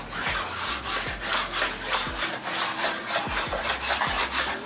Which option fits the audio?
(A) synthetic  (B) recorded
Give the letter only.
B